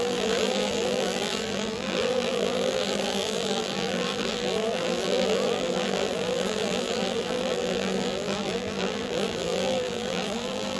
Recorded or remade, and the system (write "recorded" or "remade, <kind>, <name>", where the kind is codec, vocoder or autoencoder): remade, vocoder, BigVGAN v2